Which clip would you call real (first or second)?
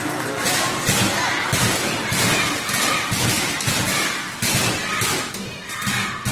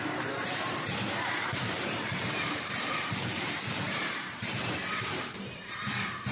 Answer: first